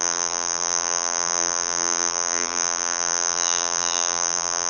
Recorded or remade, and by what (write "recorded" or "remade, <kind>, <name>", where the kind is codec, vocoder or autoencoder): remade, vocoder, BigVGAN v2